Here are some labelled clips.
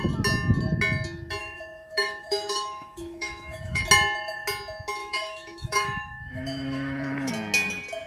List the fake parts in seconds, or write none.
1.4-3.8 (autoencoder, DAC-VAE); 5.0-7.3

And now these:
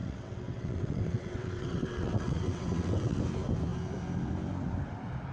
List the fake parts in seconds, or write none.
0.0-3.2 (vocoder, WaveNeXt)